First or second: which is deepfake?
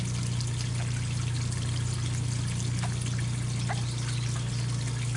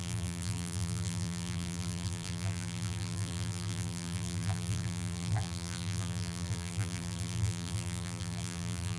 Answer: second